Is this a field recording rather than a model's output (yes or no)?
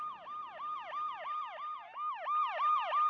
yes